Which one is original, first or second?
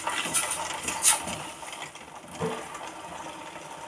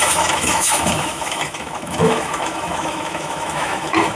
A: first